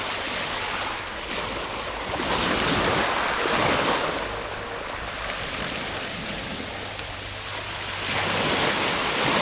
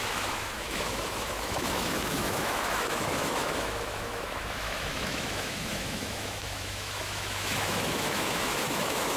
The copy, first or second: second